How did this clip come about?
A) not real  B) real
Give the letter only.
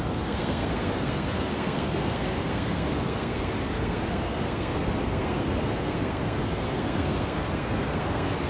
A